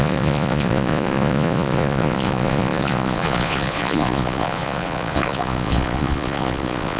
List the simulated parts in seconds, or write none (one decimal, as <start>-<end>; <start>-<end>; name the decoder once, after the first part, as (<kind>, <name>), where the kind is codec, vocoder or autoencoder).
0.0-7.0 (vocoder, Vocos)